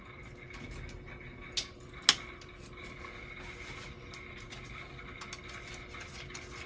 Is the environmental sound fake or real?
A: real